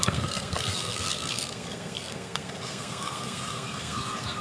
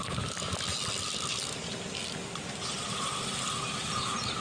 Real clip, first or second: second